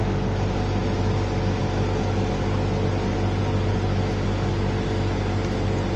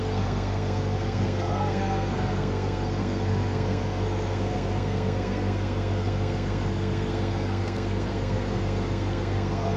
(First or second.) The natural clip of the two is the first